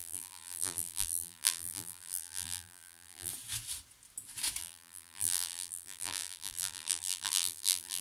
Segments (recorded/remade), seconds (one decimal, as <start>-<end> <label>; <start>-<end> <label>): 0.0-3.3 remade; 3.3-4.6 recorded; 4.6-8.0 remade